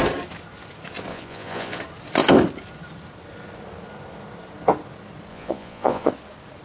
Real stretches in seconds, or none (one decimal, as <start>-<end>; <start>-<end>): 0.0-1.1; 1.8-5.3; 6.1-6.6